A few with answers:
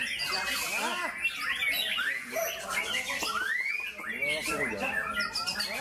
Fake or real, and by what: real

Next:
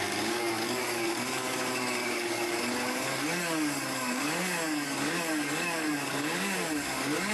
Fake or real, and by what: fake, codec, DAC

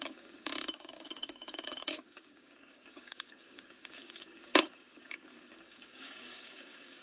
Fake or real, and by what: fake, codec, DAC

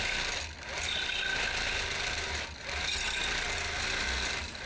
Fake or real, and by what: real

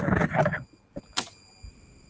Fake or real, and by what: real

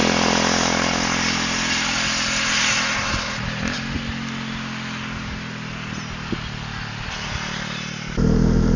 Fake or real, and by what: real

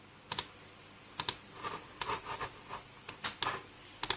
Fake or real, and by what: real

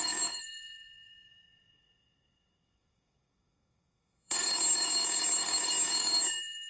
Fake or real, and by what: fake, codec, DAC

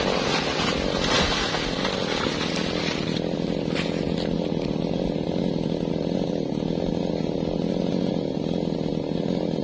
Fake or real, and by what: real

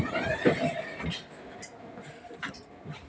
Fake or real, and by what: real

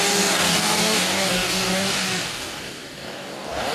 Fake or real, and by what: fake, codec, DAC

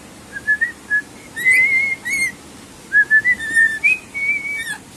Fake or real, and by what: real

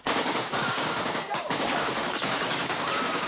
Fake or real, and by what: fake, codec, DAC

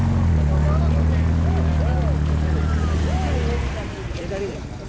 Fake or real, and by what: real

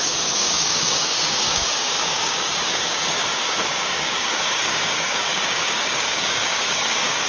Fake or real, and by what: fake, codec, DAC